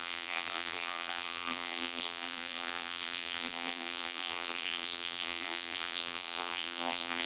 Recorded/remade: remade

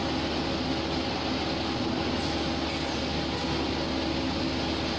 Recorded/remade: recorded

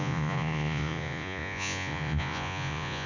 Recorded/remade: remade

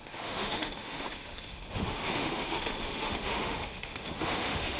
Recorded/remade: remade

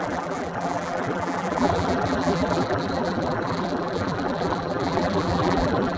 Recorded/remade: remade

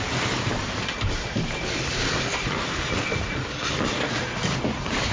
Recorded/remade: remade